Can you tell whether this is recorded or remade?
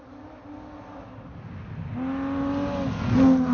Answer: recorded